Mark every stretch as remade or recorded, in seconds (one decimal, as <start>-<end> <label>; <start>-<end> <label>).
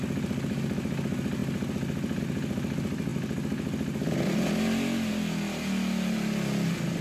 0.0-7.0 recorded